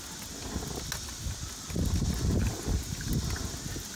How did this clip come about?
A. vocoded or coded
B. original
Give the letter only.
B